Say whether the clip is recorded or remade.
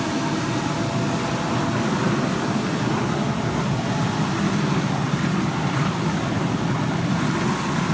recorded